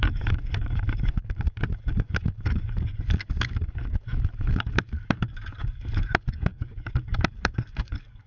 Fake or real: fake